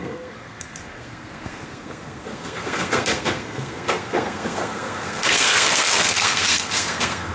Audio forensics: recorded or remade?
remade